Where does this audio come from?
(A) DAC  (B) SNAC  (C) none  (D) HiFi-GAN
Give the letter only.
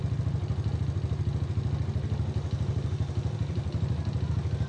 C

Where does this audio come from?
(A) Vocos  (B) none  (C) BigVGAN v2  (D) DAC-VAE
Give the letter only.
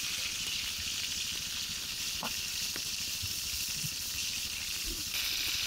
B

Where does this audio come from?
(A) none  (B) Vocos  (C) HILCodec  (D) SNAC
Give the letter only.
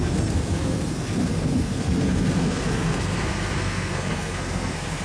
D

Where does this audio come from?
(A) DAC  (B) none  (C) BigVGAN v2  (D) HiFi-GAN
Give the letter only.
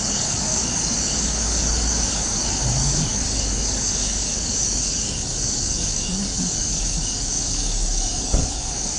A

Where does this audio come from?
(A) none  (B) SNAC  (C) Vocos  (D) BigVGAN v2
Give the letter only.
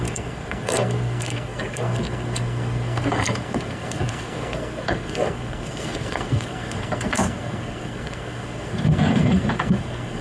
B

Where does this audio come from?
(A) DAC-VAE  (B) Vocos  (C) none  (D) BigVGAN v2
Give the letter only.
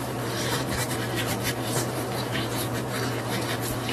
D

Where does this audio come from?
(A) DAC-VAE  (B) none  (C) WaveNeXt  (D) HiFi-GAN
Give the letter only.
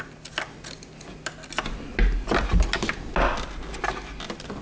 B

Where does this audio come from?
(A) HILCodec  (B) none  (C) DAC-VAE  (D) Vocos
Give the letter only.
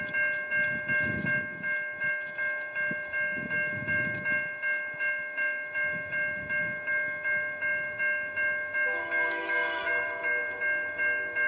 C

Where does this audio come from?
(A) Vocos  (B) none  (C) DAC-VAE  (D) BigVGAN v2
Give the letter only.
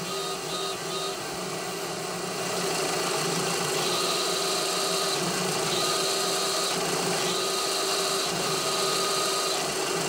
B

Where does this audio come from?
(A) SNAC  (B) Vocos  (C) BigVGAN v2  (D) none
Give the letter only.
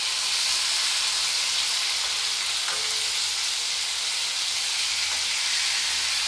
D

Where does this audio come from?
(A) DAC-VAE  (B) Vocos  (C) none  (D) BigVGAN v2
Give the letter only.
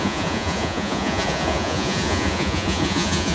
B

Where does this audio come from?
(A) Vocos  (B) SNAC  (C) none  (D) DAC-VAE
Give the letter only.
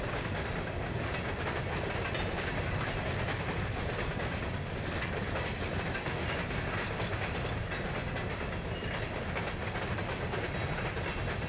C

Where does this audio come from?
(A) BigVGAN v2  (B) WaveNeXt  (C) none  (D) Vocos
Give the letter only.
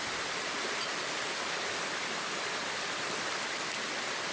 C